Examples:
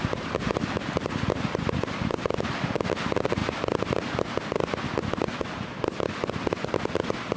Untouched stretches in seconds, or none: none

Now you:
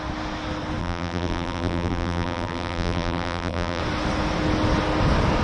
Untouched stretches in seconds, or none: 0.0-0.8; 3.8-5.4

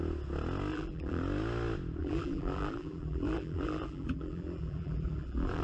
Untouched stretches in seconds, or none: 0.0-0.7; 1.2-2.0